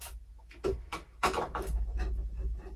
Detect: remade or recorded remade